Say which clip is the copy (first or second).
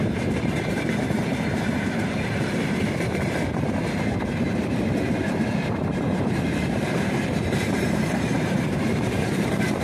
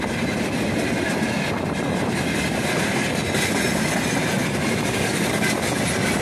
first